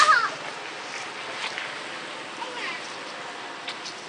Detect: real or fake real